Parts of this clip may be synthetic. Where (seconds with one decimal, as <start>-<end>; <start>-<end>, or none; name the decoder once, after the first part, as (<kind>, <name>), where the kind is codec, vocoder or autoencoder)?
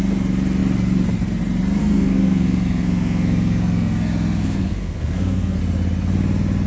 1.8-5.6 (codec, SNAC)